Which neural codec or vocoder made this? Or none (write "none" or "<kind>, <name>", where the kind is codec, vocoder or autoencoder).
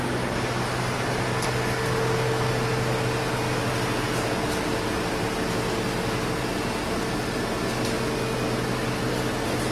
none